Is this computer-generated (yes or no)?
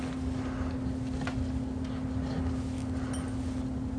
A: no